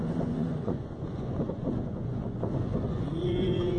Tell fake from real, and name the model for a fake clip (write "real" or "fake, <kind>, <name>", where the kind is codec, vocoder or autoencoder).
fake, vocoder, Vocos